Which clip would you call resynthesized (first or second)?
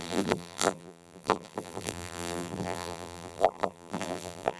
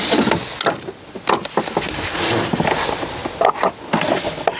first